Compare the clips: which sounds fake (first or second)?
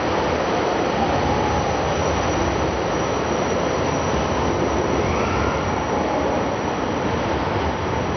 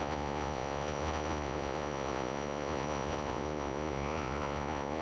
second